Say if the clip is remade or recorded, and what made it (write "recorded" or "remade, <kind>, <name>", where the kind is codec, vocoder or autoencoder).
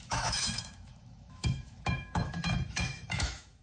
remade, autoencoder, DAC-VAE